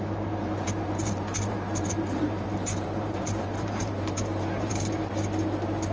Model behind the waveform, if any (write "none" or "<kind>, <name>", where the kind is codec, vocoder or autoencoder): vocoder, BigVGAN v2